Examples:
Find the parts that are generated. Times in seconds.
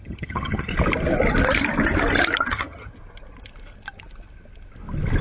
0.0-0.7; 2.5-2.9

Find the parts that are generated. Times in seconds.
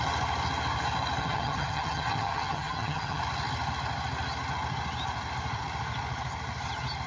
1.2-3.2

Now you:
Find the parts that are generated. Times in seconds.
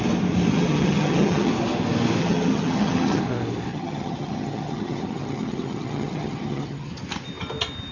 0.5-1.5; 2.2-3.2; 3.7-6.9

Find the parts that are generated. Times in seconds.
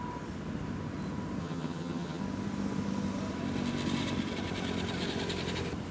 1.4-2.2